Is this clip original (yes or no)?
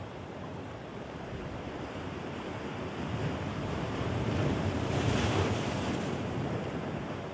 no